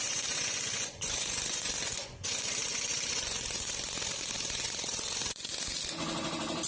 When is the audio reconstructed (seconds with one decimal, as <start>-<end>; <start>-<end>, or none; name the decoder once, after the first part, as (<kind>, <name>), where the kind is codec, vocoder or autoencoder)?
0.0-5.5 (vocoder, Vocos)